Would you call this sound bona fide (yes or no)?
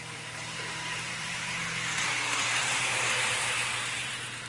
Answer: no